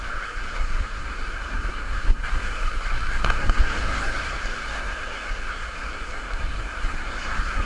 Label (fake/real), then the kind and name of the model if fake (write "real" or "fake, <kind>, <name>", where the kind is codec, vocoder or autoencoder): fake, codec, SNAC